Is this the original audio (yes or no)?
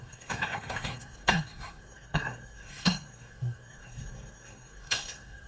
no